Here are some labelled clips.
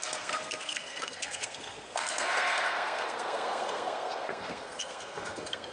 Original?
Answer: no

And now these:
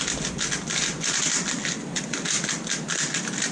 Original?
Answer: yes